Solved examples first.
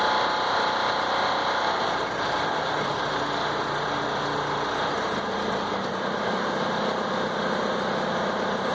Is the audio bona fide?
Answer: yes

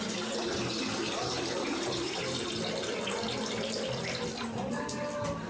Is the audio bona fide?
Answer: yes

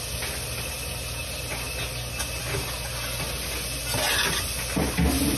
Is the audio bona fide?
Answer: yes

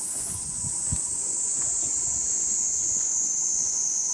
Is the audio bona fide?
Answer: no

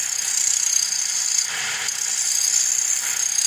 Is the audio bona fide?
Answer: yes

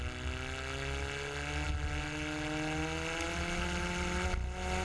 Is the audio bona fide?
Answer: yes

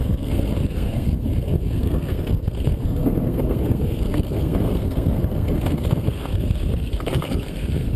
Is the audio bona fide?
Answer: no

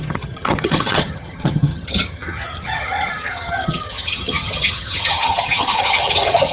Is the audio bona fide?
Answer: no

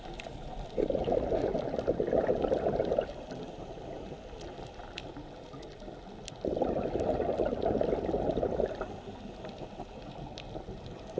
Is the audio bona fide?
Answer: yes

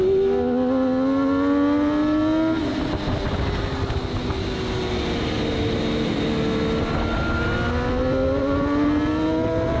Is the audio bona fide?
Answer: yes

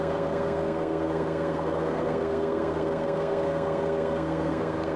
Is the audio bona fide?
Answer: no